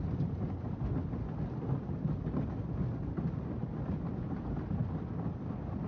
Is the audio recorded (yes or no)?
yes